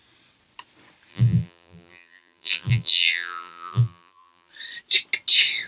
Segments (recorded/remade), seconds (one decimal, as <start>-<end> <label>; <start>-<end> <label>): 0.0-1.1 recorded; 1.1-4.5 remade; 4.5-5.7 recorded